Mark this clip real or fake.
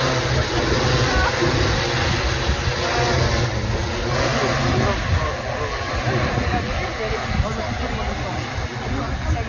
real